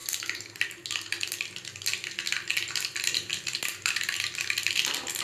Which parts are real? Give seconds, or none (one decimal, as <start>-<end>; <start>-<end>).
0.0-5.2